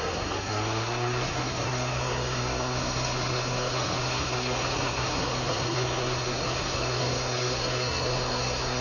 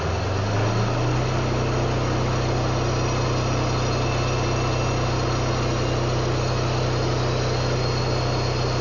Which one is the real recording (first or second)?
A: second